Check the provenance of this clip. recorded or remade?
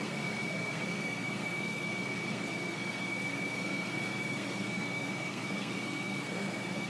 remade